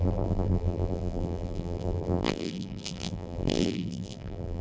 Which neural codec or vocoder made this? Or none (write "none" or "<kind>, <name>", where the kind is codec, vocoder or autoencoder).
vocoder, BigVGAN v2